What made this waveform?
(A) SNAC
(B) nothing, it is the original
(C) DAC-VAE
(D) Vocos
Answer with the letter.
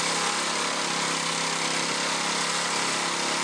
B